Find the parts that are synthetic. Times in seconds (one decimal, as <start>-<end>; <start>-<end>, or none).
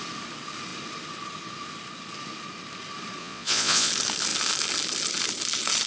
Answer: 3.2-3.9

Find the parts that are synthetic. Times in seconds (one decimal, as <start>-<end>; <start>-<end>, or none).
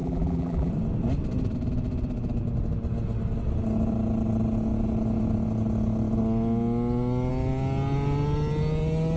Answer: 0.0-0.7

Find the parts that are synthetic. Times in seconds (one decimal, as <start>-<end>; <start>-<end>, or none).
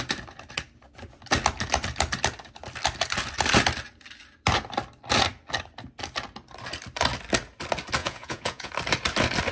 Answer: 8.0-8.7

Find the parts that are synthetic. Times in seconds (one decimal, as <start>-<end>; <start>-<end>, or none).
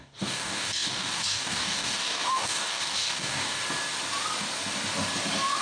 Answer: 0.0-3.6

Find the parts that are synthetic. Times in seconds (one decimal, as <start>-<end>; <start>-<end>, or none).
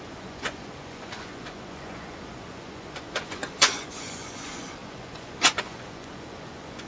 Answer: 0.0-6.9